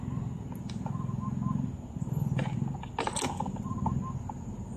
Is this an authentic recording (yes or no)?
yes